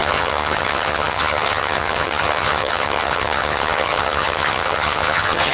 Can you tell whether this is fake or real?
fake